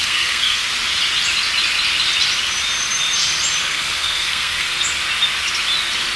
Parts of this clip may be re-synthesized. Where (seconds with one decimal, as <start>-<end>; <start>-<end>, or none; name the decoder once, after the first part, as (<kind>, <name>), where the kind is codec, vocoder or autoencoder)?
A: 0.0-0.6 (codec, SNAC); 3.6-4.8